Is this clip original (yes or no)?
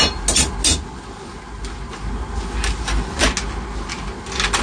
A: yes